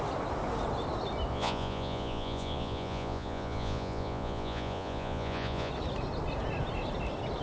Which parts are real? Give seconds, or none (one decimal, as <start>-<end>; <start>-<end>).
0.0-1.3; 5.7-7.4